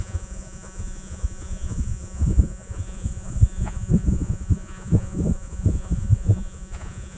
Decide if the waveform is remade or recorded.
remade